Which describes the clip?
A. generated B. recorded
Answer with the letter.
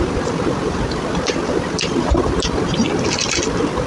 B